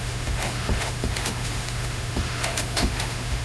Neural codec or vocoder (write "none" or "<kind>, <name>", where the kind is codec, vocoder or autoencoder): autoencoder, DAC-VAE